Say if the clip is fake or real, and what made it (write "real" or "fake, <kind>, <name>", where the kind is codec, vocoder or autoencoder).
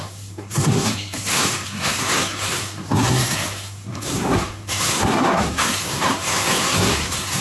fake, codec, SNAC